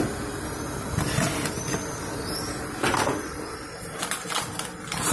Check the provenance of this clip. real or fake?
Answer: real